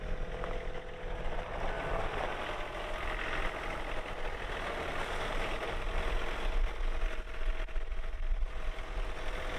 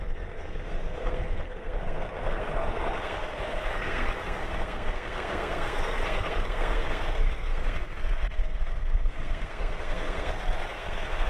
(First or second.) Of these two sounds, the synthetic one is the second